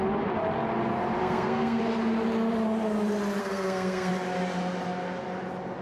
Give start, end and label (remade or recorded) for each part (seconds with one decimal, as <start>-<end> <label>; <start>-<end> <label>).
0.0-1.2 recorded; 1.2-1.8 remade; 1.8-3.4 recorded; 3.4-4.1 remade; 4.1-5.8 recorded